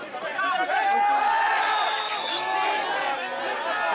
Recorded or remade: recorded